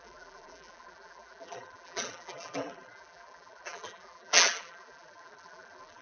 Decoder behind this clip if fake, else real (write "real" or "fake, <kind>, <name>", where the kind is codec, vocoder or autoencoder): fake, vocoder, BigVGAN v2